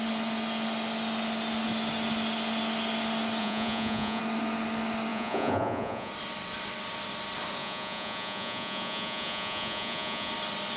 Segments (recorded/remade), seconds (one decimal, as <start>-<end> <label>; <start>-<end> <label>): 0.0-3.4 recorded; 3.4-4.2 remade; 4.2-5.1 recorded; 5.1-6.1 remade; 6.1-7.6 recorded; 7.6-10.3 remade; 10.3-10.8 recorded